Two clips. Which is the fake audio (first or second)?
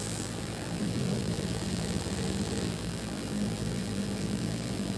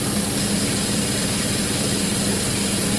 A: first